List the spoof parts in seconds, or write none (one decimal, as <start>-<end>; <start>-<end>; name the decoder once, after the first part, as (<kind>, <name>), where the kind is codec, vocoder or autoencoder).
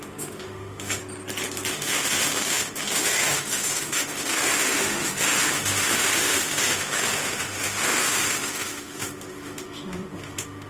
0.0-1.0 (autoencoder, DAC-VAE); 1.7-10.7